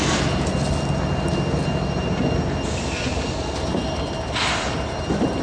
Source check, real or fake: real